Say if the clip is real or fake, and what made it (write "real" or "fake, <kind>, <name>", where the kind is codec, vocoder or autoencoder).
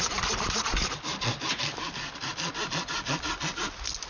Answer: real